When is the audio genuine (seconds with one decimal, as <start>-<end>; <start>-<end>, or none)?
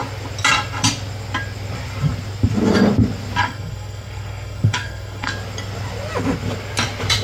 0.0-3.4; 5.3-7.2